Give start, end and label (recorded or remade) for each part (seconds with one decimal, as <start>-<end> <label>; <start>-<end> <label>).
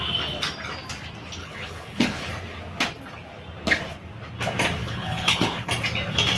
0.0-1.4 recorded; 1.4-2.3 remade; 2.3-4.8 recorded; 4.8-5.7 remade; 5.7-6.4 recorded